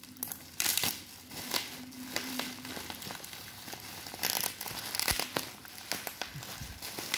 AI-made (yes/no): no